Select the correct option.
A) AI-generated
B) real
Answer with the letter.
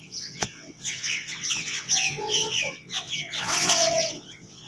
A